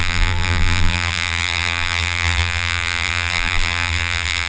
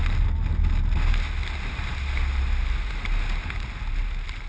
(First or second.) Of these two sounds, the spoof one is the first